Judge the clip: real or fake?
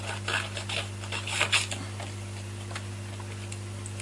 real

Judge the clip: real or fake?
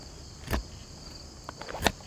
fake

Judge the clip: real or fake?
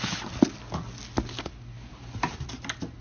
real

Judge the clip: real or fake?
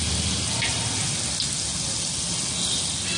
real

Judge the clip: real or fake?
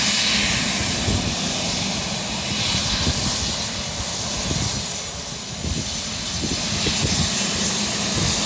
real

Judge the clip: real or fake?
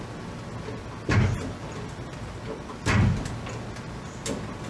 real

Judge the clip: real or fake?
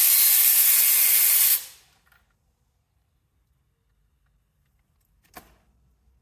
real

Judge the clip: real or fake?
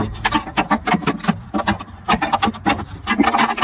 real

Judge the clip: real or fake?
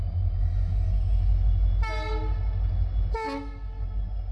real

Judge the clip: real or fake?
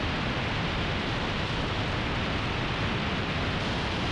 fake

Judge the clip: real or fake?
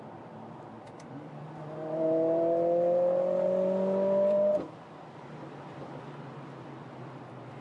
fake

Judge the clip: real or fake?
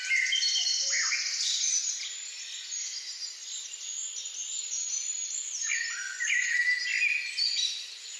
real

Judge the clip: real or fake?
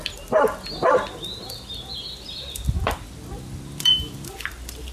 fake